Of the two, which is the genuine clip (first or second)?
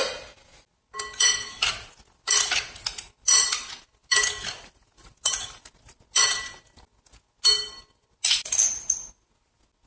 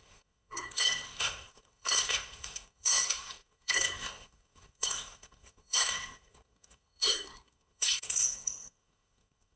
first